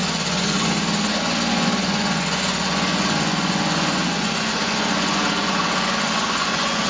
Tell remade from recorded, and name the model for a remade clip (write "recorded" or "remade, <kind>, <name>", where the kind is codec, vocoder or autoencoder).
remade, vocoder, Vocos